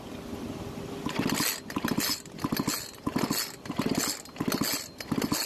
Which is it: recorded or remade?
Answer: recorded